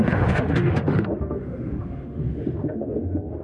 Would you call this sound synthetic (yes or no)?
yes